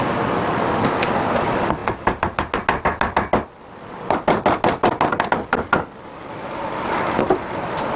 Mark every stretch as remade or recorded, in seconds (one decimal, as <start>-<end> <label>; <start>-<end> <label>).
0.0-8.0 recorded